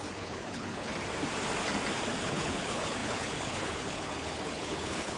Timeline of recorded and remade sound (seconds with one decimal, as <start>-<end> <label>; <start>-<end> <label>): 0.0-0.9 remade; 0.9-2.2 recorded; 2.2-5.2 remade